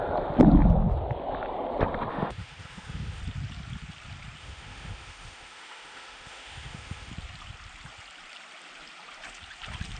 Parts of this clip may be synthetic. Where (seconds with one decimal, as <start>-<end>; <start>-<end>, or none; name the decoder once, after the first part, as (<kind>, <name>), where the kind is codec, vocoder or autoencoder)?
2.1-3.2 (autoencoder, DAC-VAE); 4.4-7.1